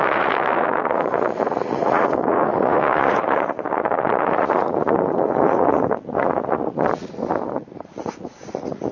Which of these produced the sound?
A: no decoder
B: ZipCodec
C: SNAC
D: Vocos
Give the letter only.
D